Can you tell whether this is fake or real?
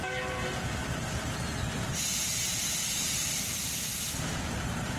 fake